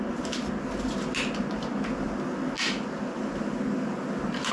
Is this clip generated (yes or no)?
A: no